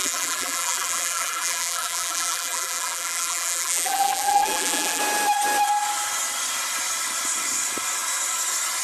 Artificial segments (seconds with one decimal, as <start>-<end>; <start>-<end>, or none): 0.0-5.0